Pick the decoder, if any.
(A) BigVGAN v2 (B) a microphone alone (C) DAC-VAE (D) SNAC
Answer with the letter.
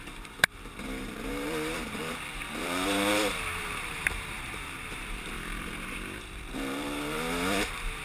A